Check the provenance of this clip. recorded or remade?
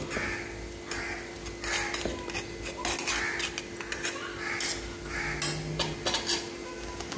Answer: recorded